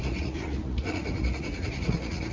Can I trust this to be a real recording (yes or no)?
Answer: no